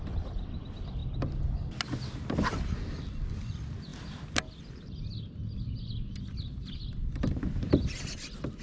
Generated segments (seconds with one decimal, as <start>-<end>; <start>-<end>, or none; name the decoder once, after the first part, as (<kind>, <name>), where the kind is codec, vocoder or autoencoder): none